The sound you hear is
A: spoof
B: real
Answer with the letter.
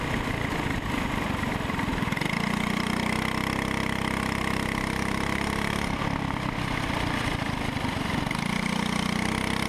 B